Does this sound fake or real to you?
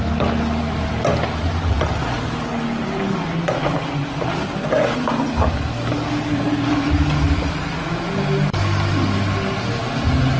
real